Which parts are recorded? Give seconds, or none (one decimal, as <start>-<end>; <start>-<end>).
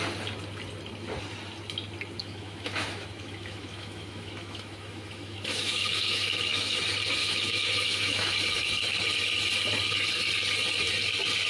0.0-2.2; 6.8-7.2; 8.3-11.5